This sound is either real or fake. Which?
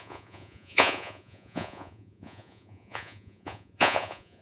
fake